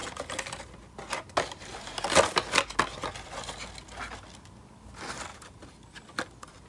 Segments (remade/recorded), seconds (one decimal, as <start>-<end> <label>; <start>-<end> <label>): 0.0-5.3 recorded; 5.3-6.1 remade; 6.1-6.7 recorded